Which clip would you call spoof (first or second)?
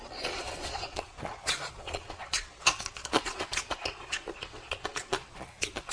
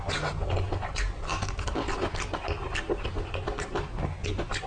first